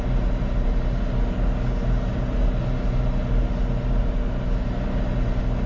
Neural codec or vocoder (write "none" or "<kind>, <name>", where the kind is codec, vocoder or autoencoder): none